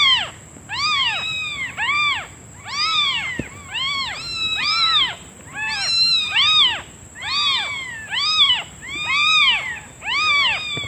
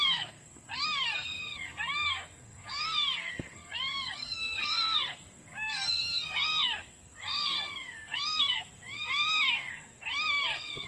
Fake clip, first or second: second